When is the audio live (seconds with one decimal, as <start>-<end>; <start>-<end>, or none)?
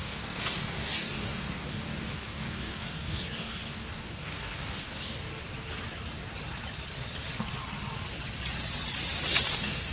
5.3-9.5